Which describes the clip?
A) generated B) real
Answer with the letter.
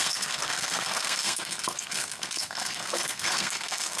A